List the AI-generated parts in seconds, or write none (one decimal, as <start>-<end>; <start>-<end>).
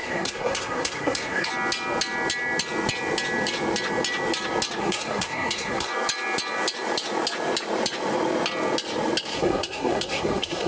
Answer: 0.0-1.5; 4.8-5.9; 9.3-10.7